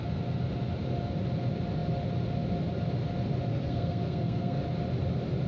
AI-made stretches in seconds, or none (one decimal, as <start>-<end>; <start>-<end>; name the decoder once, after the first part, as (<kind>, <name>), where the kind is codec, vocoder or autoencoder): 3.5-4.6 (codec, SNAC)